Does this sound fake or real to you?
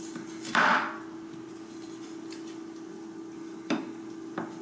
real